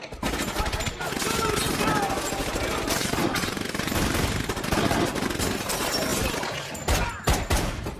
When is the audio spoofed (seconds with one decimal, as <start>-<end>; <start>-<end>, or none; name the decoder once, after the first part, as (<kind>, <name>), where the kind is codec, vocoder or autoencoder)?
2.4-5.4 (vocoder, BigVGAN v2)